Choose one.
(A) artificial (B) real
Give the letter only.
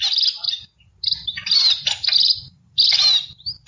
B